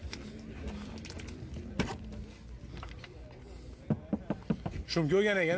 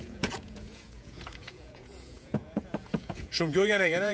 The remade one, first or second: second